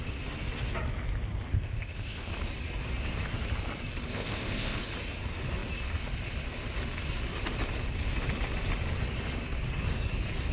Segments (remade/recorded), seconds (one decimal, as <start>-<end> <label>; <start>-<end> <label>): 0.0-1.5 recorded; 1.5-2.3 remade; 2.3-4.1 recorded; 4.1-4.8 remade; 4.8-10.5 recorded